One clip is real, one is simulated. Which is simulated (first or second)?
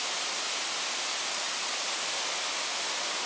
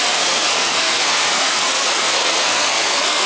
second